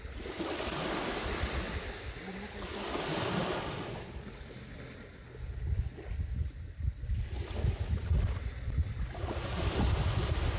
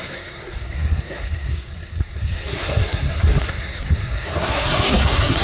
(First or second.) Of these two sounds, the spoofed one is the second